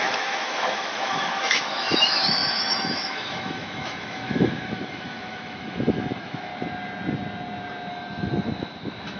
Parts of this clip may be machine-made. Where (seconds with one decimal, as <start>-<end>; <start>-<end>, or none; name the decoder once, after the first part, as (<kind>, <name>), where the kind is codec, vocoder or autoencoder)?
0.0-6.5 (autoencoder, DAC-VAE); 7.9-9.2